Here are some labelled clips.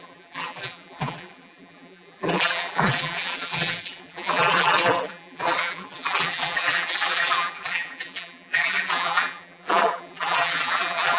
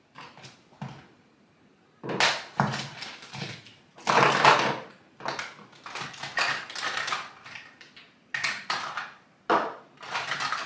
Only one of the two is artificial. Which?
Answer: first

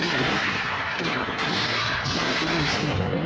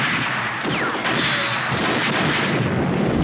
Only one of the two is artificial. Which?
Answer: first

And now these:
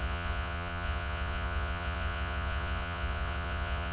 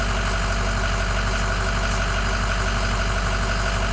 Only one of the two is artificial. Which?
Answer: first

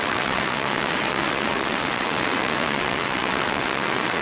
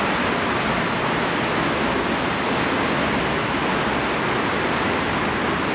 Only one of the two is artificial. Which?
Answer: first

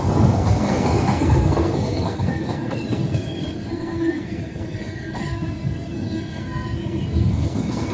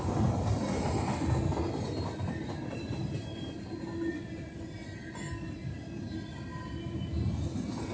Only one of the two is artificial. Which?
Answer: first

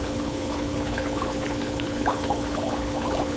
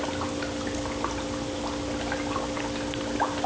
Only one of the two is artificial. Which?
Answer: first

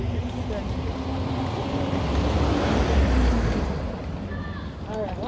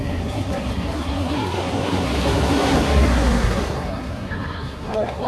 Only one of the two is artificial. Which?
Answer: second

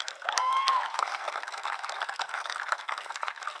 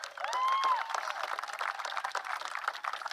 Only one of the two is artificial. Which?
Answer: first